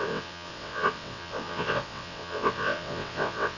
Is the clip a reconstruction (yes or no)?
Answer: yes